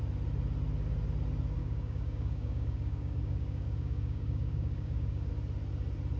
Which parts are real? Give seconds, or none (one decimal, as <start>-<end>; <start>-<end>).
0.0-1.6; 5.3-6.2